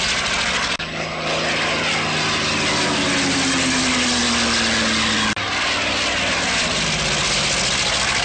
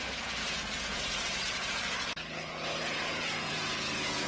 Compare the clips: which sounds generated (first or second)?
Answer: second